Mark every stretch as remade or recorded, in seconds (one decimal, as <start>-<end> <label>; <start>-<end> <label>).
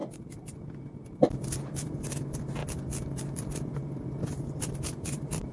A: 0.0-1.8 recorded; 1.8-2.6 remade; 2.6-4.8 recorded; 4.8-5.5 remade